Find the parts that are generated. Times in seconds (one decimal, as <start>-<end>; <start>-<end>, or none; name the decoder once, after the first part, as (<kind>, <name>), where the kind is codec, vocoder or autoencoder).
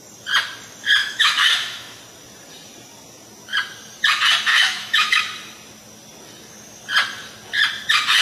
1.0-2.0 (autoencoder, DAC-VAE); 4.5-5.2